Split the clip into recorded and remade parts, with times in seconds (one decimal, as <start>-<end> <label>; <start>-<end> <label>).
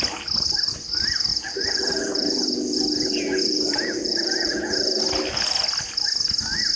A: 0.0-1.3 recorded; 1.3-5.0 remade; 5.0-6.8 recorded